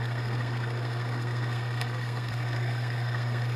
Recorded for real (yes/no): no